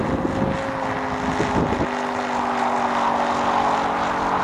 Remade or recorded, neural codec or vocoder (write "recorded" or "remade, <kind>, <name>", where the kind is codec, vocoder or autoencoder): recorded